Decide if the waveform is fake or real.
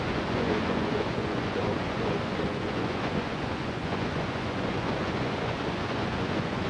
fake